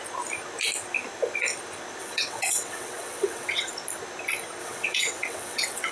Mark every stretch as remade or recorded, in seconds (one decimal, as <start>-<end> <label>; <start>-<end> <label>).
0.0-2.0 recorded; 2.0-3.7 remade; 3.7-4.6 recorded; 4.6-5.9 remade

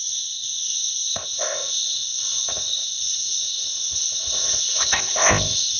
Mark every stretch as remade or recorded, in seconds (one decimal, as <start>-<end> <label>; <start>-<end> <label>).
0.0-5.8 remade

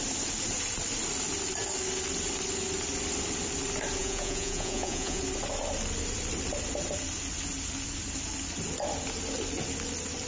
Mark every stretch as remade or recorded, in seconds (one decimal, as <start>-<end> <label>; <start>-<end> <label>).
0.0-4.0 recorded; 4.0-5.2 remade; 5.2-10.3 recorded